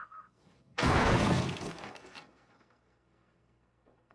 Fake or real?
fake